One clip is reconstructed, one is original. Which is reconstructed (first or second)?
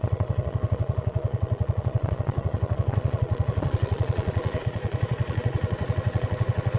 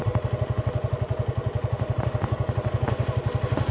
first